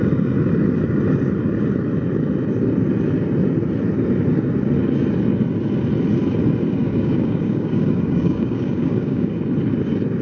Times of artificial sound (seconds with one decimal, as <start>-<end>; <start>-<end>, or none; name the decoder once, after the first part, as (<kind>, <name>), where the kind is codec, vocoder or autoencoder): 6.8-9.3 (codec, DAC)